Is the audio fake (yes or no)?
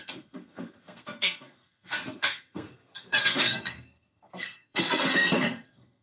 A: yes